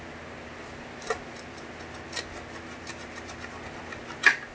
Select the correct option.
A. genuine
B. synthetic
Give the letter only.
A